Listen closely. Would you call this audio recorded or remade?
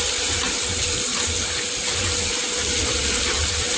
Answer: recorded